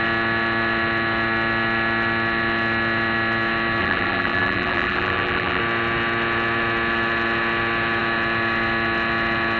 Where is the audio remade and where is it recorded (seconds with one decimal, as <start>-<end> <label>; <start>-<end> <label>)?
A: 0.0-3.8 recorded; 3.8-5.6 remade; 5.6-9.6 recorded